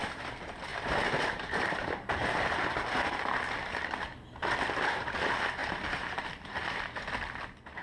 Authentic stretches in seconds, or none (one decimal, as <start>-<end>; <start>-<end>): 0.0-0.7; 3.4-5.6; 6.2-7.8